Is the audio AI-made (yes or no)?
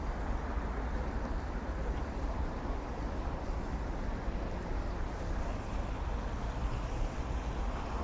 no